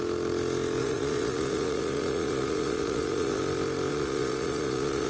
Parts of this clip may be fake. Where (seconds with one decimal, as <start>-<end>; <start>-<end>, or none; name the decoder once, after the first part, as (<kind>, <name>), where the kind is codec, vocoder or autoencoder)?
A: 0.8-3.4 (vocoder, Vocos); 3.9-5.1